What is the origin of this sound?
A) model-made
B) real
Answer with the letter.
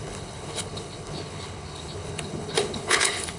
A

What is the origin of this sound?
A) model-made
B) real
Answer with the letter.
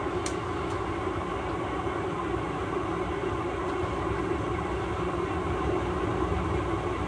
B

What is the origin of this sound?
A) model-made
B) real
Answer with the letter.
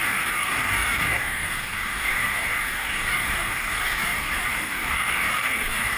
A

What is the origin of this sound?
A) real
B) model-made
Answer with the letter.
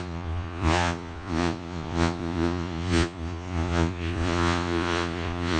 B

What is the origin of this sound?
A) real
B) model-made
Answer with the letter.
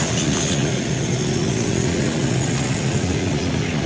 B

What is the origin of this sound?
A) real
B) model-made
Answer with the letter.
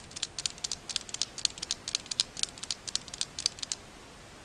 A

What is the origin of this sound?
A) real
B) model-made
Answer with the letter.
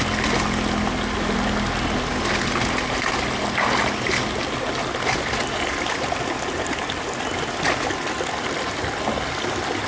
A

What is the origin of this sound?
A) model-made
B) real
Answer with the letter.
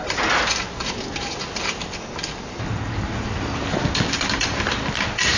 B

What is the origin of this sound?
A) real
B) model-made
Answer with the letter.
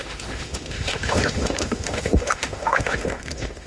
B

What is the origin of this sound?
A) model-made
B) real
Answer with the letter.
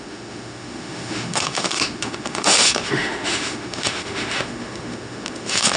A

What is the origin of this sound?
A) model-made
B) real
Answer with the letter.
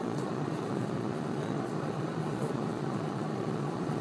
A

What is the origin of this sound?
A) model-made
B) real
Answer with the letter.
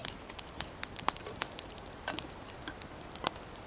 B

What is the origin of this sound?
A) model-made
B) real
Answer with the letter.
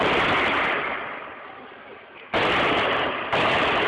B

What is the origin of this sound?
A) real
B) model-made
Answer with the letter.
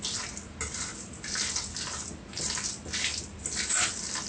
A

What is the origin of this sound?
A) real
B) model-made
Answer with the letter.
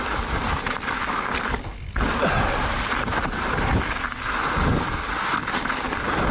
A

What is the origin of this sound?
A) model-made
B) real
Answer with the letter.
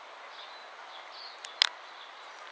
B